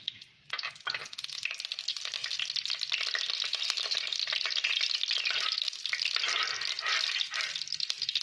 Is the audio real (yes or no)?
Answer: yes